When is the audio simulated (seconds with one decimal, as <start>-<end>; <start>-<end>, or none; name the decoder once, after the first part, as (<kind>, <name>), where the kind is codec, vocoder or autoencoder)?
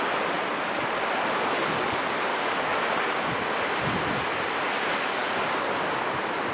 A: 2.3-2.8 (codec, DAC)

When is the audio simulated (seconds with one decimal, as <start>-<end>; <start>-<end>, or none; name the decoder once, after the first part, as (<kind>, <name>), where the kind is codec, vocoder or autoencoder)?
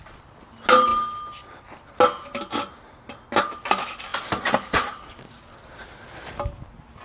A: none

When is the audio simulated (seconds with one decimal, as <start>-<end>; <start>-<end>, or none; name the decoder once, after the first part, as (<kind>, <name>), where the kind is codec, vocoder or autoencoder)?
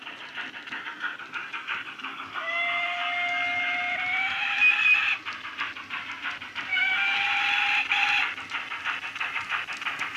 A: 1.4-3.6 (codec, DAC); 6.7-7.3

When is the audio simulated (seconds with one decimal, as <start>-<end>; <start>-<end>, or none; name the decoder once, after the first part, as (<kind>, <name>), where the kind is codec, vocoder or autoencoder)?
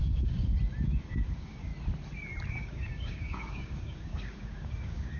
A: 0.0-0.5 (codec, DAC); 1.0-1.7; 2.5-5.2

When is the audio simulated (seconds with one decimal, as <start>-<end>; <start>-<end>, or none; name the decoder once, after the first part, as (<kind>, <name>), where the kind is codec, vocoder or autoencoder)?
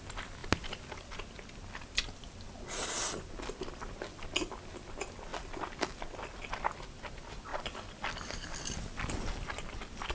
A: none